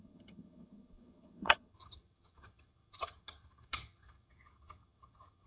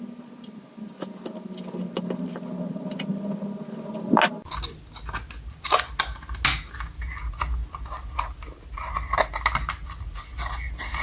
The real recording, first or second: second